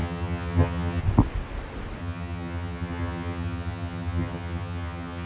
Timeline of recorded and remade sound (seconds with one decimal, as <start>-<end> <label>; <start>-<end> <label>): 0.0-1.0 remade; 1.0-2.0 recorded; 2.0-5.3 remade